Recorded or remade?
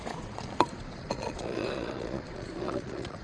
remade